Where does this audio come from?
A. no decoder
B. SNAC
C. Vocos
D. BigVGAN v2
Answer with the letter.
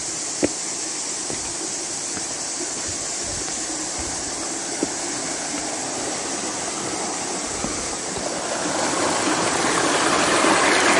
A